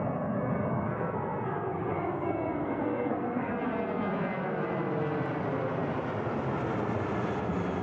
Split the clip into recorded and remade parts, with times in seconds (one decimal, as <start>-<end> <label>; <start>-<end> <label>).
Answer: 0.0-0.7 recorded; 0.7-3.5 remade; 3.5-7.8 recorded